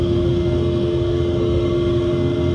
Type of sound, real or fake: fake